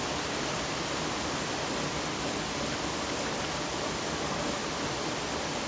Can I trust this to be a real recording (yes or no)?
yes